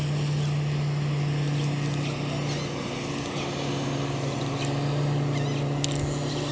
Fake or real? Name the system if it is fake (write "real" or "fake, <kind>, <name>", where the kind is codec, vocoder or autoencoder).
real